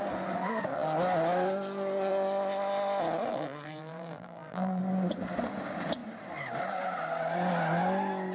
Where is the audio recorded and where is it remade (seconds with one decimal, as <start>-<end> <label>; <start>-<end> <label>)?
0.0-3.3 recorded; 3.3-4.8 remade; 4.8-8.3 recorded